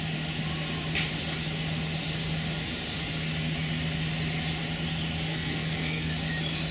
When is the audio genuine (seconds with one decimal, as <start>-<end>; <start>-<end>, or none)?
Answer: 0.0-5.3; 6.1-6.7